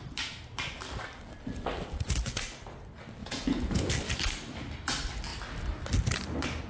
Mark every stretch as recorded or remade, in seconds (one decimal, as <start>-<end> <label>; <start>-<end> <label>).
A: 0.0-3.2 recorded; 3.2-3.9 remade; 3.9-6.7 recorded